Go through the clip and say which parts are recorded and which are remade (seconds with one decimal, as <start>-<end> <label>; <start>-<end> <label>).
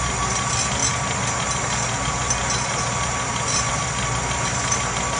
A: 0.0-5.2 recorded